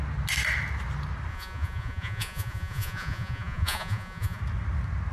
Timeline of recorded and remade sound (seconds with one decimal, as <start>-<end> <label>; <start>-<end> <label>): 0.0-1.3 recorded; 1.3-4.4 remade; 4.4-5.1 recorded